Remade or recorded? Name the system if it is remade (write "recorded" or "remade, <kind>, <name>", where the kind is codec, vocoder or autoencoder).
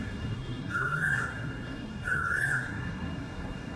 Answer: remade, codec, SNAC